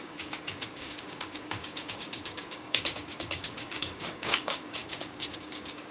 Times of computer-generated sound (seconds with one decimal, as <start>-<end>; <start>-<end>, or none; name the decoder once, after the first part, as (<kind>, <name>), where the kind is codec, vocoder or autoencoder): 0.0-5.9 (codec, DAC)